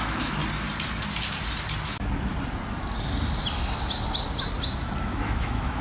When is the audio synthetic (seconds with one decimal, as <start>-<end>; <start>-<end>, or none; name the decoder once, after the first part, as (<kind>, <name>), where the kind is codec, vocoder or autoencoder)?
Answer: 0.0-0.4 (autoencoder, DAC-VAE); 1.9-2.3; 5.0-5.8